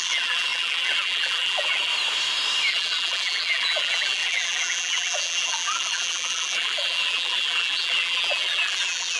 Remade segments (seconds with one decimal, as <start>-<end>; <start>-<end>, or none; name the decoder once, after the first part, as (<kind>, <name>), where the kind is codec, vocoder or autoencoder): 0.0-1.9 (vocoder, BigVGAN v2); 2.7-9.2